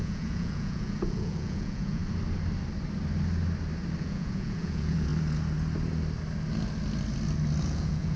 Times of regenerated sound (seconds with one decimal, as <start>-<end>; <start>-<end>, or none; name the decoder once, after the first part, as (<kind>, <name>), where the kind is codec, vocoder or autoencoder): 0.0-2.0 (vocoder, Vocos); 4.0-5.1; 7.6-8.2